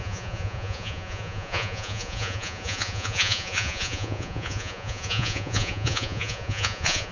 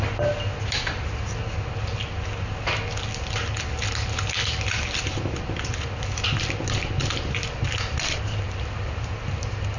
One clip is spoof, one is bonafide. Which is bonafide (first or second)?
second